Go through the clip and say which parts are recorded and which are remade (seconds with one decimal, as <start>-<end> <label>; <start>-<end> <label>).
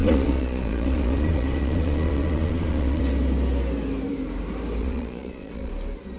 0.0-3.0 remade; 3.0-4.8 recorded; 4.8-5.7 remade; 5.7-6.2 recorded